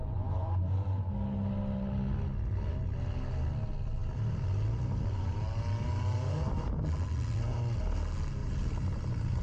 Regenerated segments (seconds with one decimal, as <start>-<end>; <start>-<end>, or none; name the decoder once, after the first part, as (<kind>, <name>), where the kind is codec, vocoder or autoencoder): 0.4-1.0 (vocoder, BigVGAN v2); 8.4-9.4